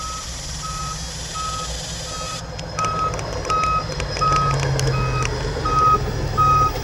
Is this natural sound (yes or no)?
yes